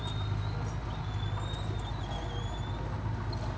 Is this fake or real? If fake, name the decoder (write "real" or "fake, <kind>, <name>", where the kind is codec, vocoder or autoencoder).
real